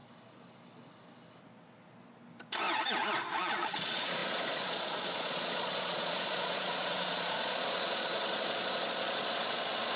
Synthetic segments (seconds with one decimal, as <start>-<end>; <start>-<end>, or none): 3.3-10.0

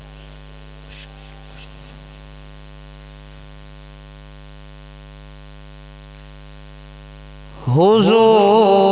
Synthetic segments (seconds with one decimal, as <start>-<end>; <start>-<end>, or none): none

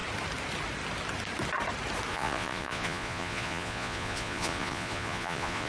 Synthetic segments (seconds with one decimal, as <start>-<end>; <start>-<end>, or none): 2.1-5.7

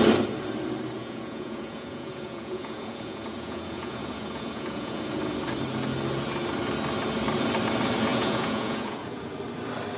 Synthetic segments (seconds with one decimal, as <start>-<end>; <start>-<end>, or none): 1.0-5.2; 8.1-9.4

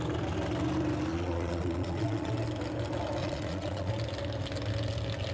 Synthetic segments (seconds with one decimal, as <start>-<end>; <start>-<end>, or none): 1.1-2.3; 3.2-3.9

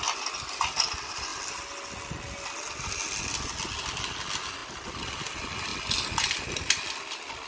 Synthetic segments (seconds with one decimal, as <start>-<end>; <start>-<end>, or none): none